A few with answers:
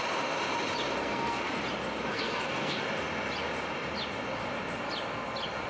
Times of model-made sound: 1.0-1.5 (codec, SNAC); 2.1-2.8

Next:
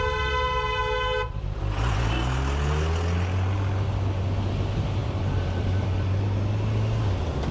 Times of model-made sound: 5.0-6.4 (vocoder, BigVGAN v2)

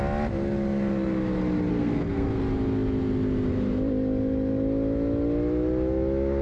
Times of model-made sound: 1.7-2.4 (codec, SNAC)

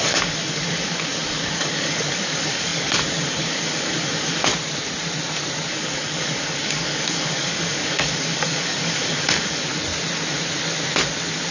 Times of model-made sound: 0.0-4.5 (codec, DAC); 5.7-9.7

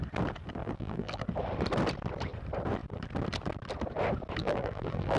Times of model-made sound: 0.6-1.2 (vocoder, BigVGAN v2); 4.4-5.2

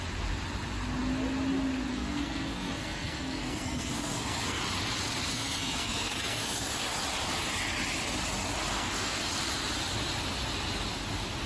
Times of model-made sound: 1.9-4.6 (codec, SNAC); 5.3-6.7; 8.7-9.3